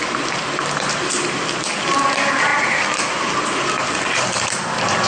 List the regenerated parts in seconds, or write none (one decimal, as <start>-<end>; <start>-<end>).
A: none